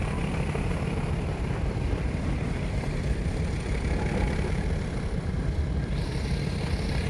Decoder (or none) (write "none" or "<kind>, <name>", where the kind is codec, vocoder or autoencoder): vocoder, BigVGAN v2